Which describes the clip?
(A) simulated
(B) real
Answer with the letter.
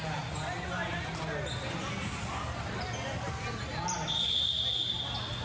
B